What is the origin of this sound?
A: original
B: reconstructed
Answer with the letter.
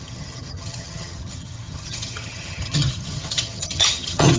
B